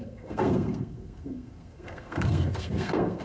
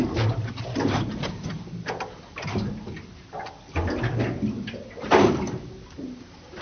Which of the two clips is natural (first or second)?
second